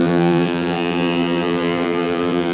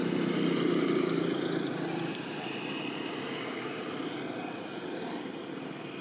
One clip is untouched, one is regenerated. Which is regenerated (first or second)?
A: first